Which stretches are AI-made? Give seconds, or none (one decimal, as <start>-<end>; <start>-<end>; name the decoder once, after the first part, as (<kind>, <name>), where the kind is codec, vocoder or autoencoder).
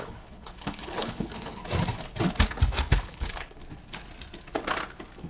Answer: 0.0-1.6 (codec, HILCodec); 2.9-3.6